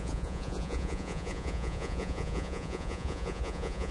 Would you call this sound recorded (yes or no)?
no